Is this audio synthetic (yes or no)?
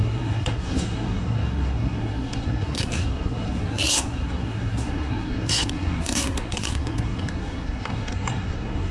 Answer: yes